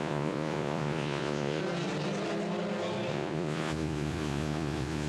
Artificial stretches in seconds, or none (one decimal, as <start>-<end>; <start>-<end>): 0.0-1.6; 3.1-5.1